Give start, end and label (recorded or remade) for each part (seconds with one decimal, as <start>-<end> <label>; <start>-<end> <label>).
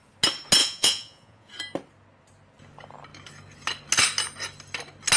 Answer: 0.0-0.6 recorded; 0.6-1.5 remade; 1.5-5.2 recorded